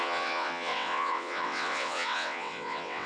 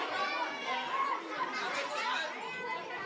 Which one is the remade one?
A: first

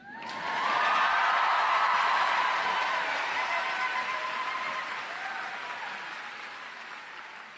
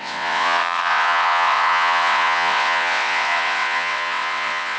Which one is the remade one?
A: second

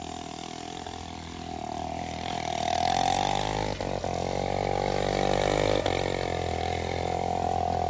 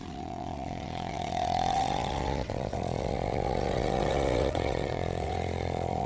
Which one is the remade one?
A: second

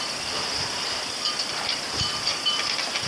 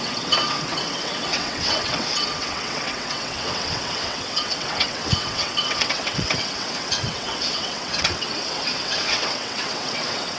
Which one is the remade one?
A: second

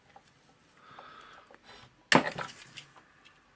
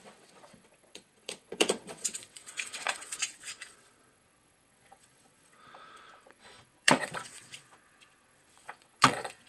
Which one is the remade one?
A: second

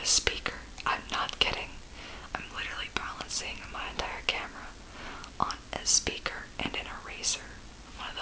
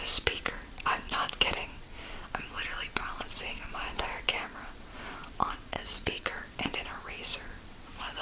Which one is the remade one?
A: second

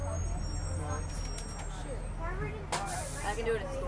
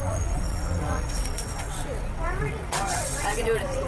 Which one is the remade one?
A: second